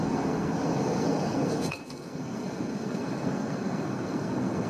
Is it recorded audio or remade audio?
remade